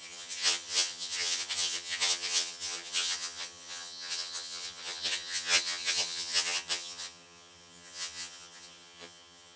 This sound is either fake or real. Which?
fake